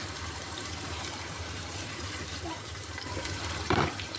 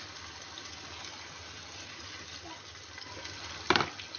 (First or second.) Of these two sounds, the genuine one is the second